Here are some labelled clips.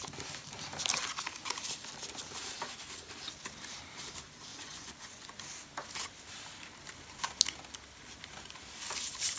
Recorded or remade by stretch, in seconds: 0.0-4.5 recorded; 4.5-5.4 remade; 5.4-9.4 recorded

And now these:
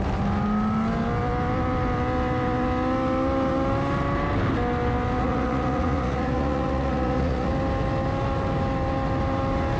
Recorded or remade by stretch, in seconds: 0.0-5.2 recorded; 5.2-7.5 remade; 7.5-9.8 recorded

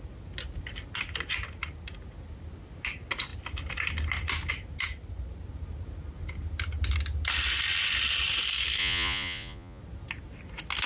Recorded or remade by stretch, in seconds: 0.0-8.8 recorded; 8.8-9.8 remade; 9.8-10.9 recorded

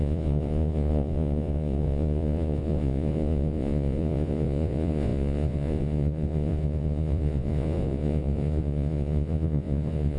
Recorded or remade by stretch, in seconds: 0.0-10.2 remade

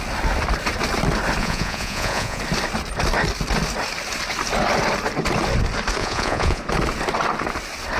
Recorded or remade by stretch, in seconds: 0.0-1.4 recorded; 1.4-2.4 remade; 2.4-6.0 recorded; 6.0-6.6 remade; 6.6-8.0 recorded

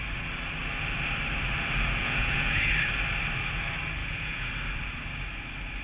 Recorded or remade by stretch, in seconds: 0.0-2.0 recorded; 2.0-2.7 remade; 2.7-4.0 recorded; 4.0-4.5 remade; 4.5-5.8 recorded

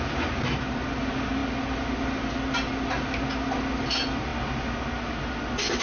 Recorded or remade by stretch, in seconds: 0.0-5.8 recorded